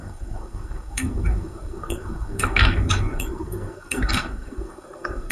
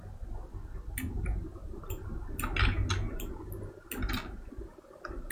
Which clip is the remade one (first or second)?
first